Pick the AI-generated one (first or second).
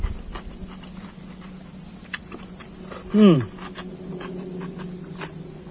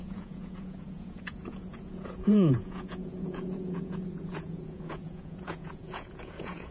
second